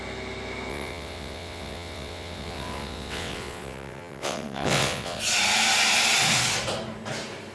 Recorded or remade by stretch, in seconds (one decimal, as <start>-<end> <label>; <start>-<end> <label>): 0.0-0.7 recorded; 0.7-5.2 remade; 5.2-7.5 recorded